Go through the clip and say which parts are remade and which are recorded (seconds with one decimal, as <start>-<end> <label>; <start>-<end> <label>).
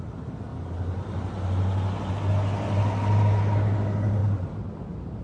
0.0-5.2 recorded